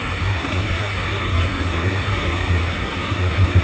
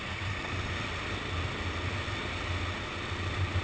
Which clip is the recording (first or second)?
second